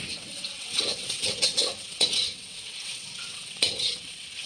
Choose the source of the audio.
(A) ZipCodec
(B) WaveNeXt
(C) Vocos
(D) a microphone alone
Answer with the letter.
B